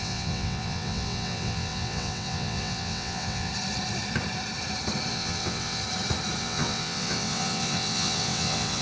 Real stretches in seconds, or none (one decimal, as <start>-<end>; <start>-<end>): 3.5-5.1; 5.8-6.4